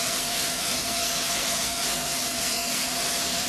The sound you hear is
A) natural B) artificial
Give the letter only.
B